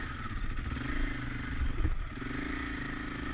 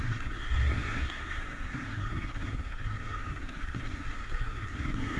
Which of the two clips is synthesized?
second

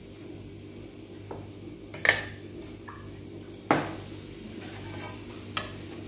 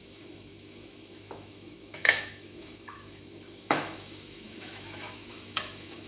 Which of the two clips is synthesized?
second